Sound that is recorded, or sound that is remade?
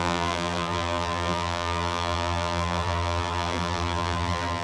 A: remade